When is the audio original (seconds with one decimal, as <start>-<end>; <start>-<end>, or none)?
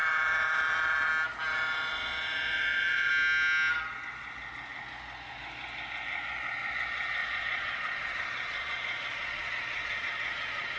1.1-1.5; 3.1-7.2